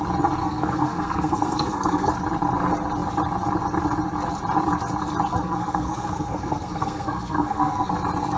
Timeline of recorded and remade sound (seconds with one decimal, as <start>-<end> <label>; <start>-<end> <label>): 0.0-0.4 recorded; 0.4-2.1 remade; 2.1-5.3 recorded; 5.3-7.9 remade; 7.9-8.4 recorded